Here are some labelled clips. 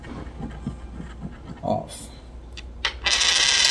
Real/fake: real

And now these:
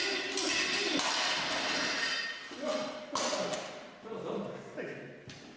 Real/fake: real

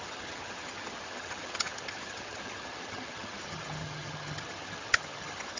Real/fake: fake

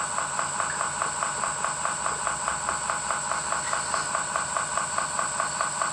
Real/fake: real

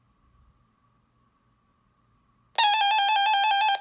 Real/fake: real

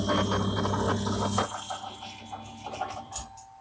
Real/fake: real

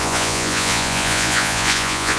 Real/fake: fake